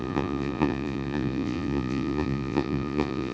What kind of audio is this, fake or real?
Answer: fake